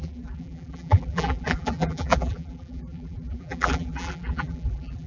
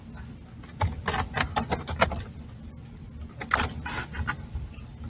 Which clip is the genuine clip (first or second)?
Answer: second